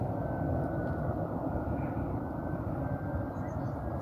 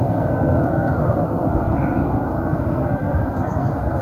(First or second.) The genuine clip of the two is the first